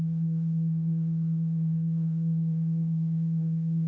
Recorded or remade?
remade